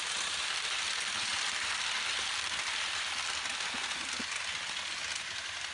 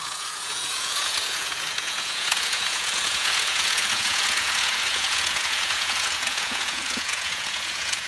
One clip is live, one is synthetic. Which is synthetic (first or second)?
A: second